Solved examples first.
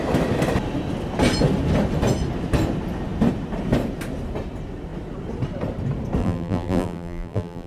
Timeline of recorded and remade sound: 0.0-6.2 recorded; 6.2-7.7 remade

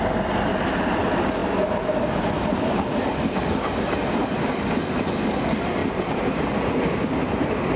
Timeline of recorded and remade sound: 0.0-5.8 recorded; 5.8-6.5 remade; 6.5-7.8 recorded

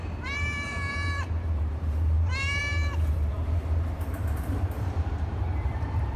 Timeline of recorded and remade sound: 0.0-6.2 remade